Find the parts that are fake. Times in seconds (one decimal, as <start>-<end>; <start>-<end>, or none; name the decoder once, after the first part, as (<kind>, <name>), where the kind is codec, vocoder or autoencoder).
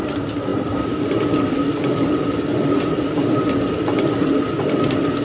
none